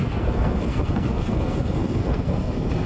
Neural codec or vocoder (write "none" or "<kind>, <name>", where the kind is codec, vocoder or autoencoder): codec, SNAC